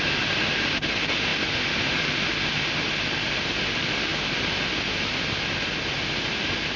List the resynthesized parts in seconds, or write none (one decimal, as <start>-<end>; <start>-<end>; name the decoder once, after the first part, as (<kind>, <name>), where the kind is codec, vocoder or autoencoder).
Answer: none